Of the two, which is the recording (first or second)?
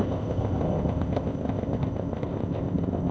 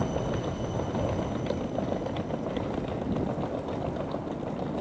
second